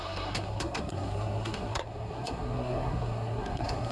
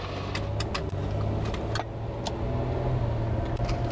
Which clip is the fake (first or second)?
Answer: first